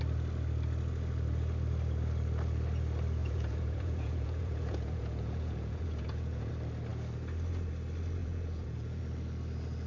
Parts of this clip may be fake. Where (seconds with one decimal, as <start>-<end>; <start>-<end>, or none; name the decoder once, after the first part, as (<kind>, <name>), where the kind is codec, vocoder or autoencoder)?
3.2-6.5 (vocoder, Vocos); 8.2-9.0